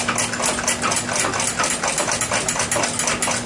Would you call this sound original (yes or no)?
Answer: yes